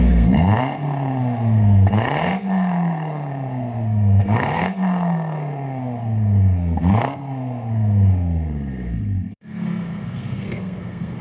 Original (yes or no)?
no